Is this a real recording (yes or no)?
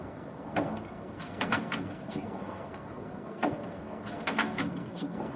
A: no